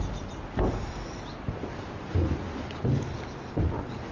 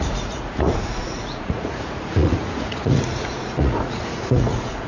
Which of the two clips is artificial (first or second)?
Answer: second